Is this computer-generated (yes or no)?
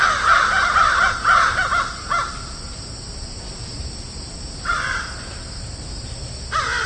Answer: no